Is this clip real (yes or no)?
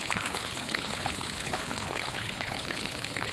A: no